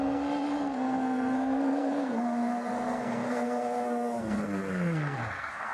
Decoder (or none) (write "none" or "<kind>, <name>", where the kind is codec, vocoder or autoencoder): codec, SNAC